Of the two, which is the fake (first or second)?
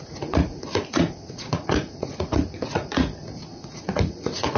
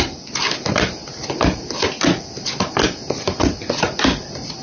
first